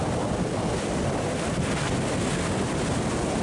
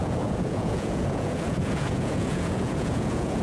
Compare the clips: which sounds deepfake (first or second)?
second